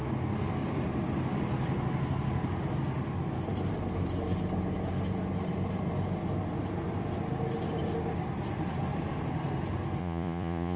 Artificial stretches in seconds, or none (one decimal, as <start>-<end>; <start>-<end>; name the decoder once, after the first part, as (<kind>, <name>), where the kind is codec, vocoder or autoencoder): 10.0-10.8 (vocoder, Vocos)